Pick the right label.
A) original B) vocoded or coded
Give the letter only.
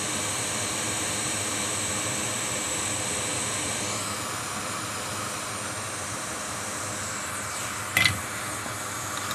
A